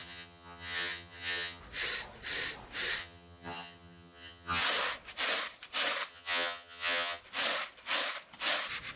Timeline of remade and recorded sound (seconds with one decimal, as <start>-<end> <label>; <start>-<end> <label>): 0.0-1.6 remade; 1.6-3.0 recorded; 3.0-4.6 remade; 4.6-6.1 recorded; 6.1-7.2 remade; 7.2-9.0 recorded